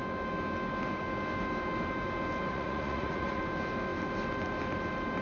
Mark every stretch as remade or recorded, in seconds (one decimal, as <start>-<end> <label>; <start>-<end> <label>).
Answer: 0.0-2.5 recorded; 2.5-3.4 remade; 3.4-5.2 recorded